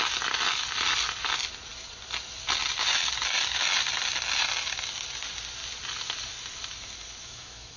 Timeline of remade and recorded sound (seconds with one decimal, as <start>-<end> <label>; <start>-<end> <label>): 0.0-7.2 recorded; 7.2-7.8 remade